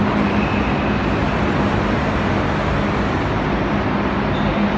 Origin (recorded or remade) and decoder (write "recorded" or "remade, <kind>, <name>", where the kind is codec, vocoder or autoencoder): recorded